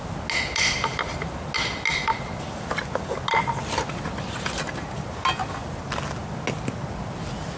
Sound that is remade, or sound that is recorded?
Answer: recorded